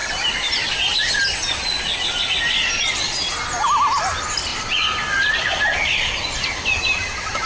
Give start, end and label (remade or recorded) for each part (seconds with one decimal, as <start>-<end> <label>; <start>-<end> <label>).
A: 0.0-0.7 remade; 0.7-7.5 recorded